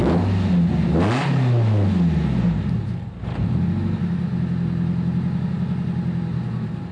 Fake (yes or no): no